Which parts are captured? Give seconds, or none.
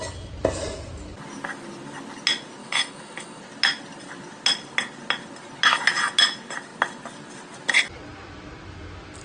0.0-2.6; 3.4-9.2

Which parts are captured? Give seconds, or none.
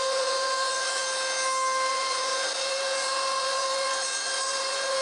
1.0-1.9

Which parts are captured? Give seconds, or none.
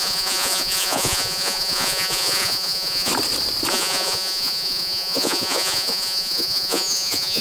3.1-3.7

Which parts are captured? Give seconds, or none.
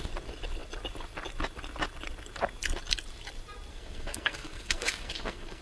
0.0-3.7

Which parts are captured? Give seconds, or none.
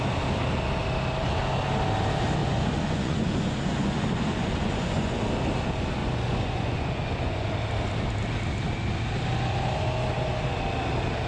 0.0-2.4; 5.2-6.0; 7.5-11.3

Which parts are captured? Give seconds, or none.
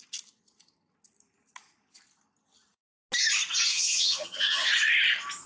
0.0-3.7; 4.7-5.5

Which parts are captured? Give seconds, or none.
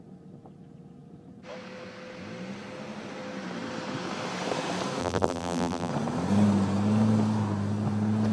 0.0-5.0; 5.9-8.3